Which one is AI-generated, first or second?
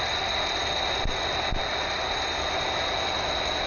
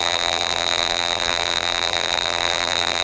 second